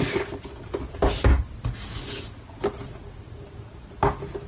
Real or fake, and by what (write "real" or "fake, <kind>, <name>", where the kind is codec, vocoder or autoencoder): real